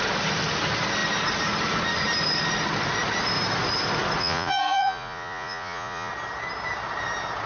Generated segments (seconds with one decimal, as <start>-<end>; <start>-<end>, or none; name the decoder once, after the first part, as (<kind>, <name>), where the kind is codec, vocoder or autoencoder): 4.2-6.1 (vocoder, Vocos)